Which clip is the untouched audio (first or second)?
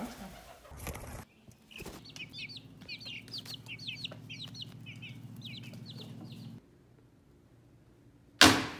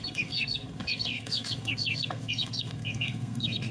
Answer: first